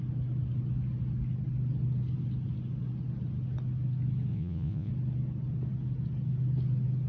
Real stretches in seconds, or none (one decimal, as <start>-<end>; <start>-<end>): 0.0-4.3; 4.9-7.1